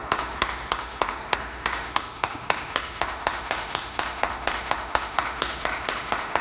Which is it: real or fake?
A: fake